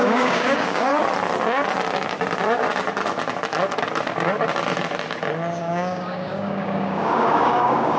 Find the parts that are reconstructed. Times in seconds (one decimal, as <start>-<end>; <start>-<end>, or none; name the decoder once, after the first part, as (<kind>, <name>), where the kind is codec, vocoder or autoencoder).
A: 0.0-0.9 (codec, DAC); 5.6-8.0